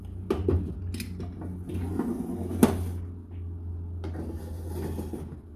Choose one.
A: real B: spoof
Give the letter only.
A